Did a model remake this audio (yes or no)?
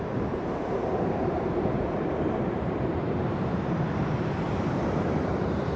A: yes